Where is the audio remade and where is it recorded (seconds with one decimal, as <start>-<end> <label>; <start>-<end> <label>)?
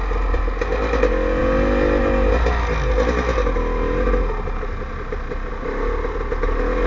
0.0-6.9 recorded